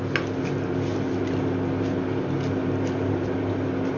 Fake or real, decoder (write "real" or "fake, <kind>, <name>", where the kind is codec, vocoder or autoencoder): real